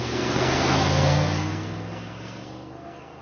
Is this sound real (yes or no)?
no